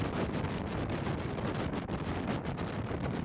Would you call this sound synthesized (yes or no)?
no